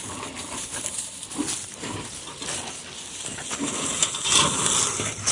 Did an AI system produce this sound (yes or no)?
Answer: no